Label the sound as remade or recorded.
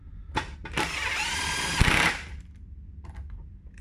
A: recorded